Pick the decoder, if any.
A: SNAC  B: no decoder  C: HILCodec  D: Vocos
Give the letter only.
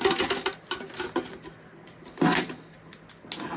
B